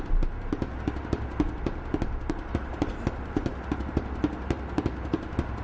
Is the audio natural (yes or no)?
yes